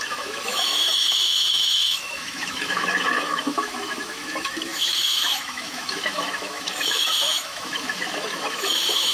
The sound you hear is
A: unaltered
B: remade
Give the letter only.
B